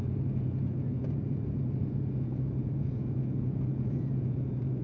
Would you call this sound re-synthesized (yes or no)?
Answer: yes